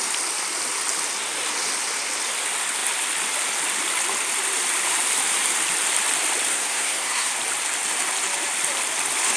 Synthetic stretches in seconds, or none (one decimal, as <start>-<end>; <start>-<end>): 6.5-7.3